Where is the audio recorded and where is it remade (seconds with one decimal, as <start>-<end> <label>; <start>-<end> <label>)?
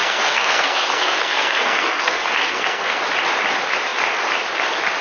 0.0-3.0 remade; 3.0-5.0 recorded